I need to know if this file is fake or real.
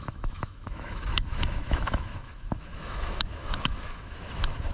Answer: fake